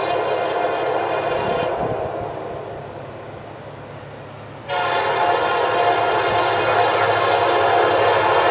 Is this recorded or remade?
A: recorded